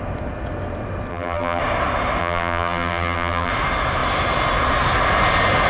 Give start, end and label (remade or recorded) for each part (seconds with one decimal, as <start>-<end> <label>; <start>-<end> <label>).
0.0-1.1 recorded; 1.1-1.6 remade; 1.6-2.2 recorded; 2.2-3.5 remade; 3.5-5.7 recorded